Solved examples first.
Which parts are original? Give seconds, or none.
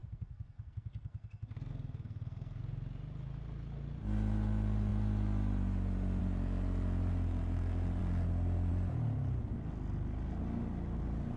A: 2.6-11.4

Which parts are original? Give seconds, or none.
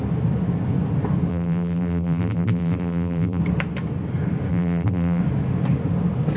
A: 0.0-1.3; 3.4-4.5; 5.2-6.4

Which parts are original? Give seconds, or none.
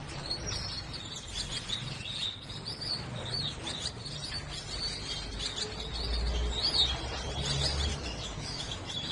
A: 0.0-7.9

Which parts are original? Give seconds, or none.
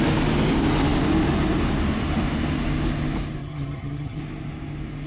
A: 0.0-3.4; 4.2-5.1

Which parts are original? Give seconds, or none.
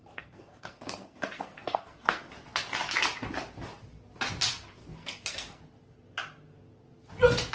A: 2.3-4.8; 5.6-7.5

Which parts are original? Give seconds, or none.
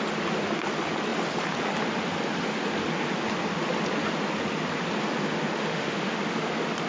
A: 0.0-5.7; 6.2-6.9